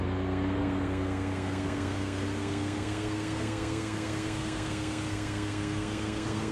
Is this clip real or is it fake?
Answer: fake